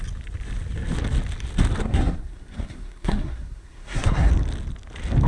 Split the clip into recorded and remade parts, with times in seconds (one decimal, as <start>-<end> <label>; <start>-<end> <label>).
0.0-1.8 recorded; 1.8-4.3 remade; 4.3-5.3 recorded

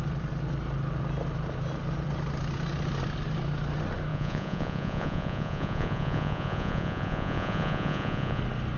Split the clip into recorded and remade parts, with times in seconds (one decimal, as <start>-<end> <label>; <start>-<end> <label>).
0.0-4.1 recorded; 4.1-8.4 remade; 8.4-8.8 recorded

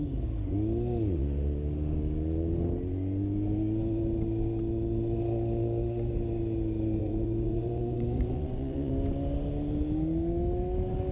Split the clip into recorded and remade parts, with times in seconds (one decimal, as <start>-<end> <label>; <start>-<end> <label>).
0.0-7.0 recorded; 7.0-8.9 remade; 8.9-11.1 recorded

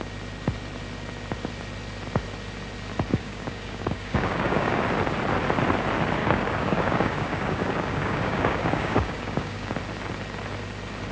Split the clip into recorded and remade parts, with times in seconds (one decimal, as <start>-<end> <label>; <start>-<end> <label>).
0.0-3.1 recorded; 3.1-4.8 remade; 4.8-6.2 recorded; 6.2-9.7 remade; 9.7-11.1 recorded

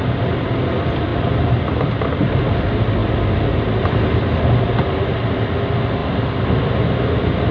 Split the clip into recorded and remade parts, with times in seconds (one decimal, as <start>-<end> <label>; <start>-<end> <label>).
0.0-7.5 recorded

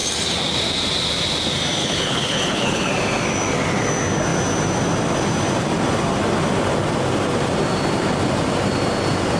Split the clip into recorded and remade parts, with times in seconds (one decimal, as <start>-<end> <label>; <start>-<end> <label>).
0.0-1.8 recorded; 1.8-2.9 remade; 2.9-9.4 recorded